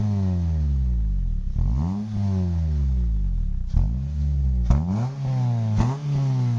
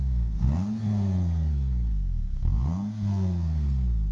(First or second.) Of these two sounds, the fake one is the second